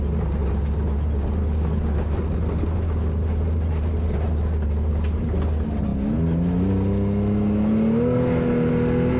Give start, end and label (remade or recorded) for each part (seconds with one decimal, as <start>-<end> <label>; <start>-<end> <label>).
0.0-9.2 recorded